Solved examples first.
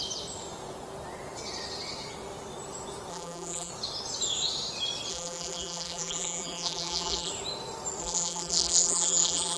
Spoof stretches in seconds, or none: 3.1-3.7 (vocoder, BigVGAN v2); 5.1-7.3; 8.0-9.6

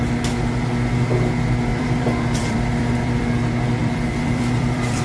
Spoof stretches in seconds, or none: 1.7-3.2 (vocoder, BigVGAN v2); 3.8-5.0